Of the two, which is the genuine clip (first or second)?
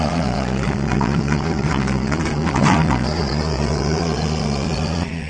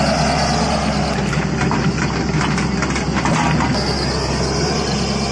second